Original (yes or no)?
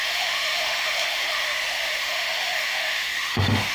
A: no